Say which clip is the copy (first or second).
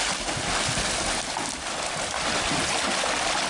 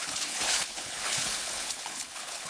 second